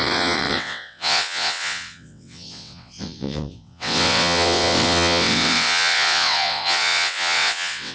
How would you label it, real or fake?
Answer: fake